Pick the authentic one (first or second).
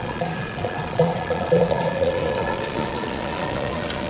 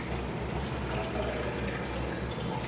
second